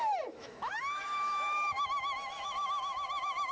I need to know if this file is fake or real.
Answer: fake